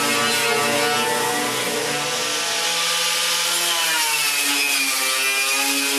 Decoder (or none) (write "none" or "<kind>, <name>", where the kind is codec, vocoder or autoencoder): none